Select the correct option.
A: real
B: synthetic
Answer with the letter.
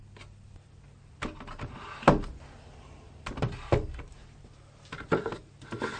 A